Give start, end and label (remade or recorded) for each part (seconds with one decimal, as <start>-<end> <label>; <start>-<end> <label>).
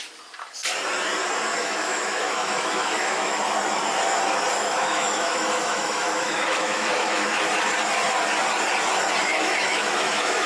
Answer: 0.0-1.6 recorded; 1.6-3.4 remade; 3.4-4.6 recorded; 4.6-7.4 remade; 7.4-9.3 recorded; 9.3-10.5 remade